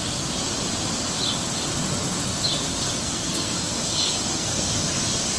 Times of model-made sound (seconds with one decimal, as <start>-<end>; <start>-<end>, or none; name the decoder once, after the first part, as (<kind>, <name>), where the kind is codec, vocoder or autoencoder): 2.7-4.7 (codec, SNAC)